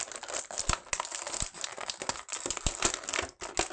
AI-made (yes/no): no